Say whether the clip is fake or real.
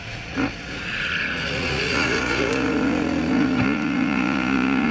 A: fake